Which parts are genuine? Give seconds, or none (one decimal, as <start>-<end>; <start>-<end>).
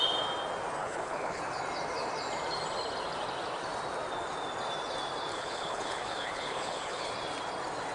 0.0-0.8; 1.4-5.3; 7.1-7.9